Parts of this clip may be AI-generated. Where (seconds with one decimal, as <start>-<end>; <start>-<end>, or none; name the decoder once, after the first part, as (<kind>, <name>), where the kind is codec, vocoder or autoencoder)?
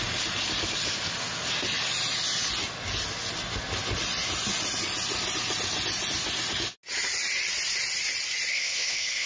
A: 8.5-9.3 (codec, ZipCodec)